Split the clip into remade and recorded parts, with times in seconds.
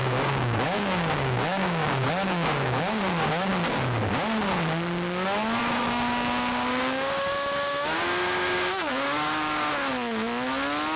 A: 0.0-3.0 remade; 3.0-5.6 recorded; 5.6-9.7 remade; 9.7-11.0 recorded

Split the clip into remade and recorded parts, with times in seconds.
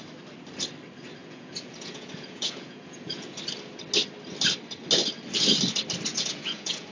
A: 0.0-1.2 recorded; 1.2-3.4 remade; 3.4-6.1 recorded; 6.1-6.9 remade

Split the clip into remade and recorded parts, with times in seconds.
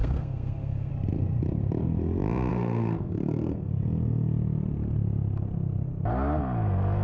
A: 0.0-0.9 remade; 0.9-2.5 recorded; 2.5-3.7 remade; 3.7-7.0 recorded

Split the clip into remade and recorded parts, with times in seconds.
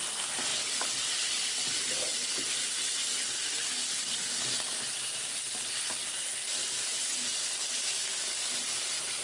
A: 0.0-9.2 recorded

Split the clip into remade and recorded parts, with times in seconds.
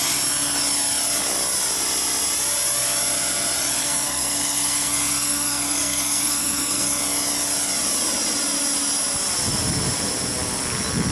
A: 0.0-3.8 recorded; 3.8-7.0 remade; 7.0-11.1 recorded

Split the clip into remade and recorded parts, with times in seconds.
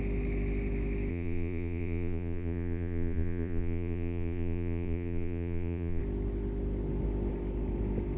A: 0.0-1.1 recorded; 1.1-6.0 remade; 6.0-8.2 recorded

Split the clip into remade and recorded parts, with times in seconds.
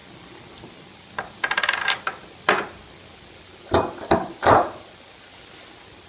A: 0.0-6.1 recorded